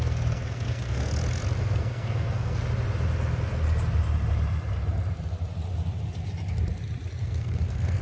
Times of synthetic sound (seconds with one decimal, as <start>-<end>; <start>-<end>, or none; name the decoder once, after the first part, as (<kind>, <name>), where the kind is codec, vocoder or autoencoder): 0.0-1.1 (codec, SNAC); 1.6-2.6; 7.2-8.0